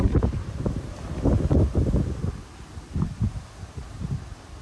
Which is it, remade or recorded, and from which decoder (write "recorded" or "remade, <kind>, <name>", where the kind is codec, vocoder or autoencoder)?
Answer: recorded